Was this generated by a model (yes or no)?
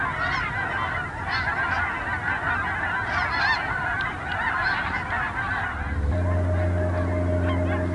no